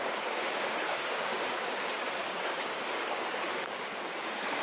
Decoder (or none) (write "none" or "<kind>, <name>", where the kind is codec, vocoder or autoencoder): codec, DAC